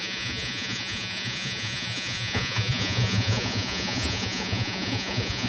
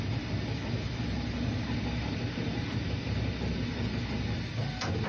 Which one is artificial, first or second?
first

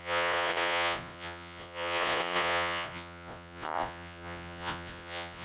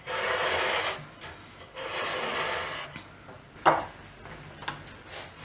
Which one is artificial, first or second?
first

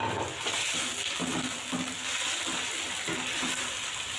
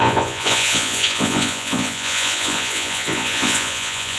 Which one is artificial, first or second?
second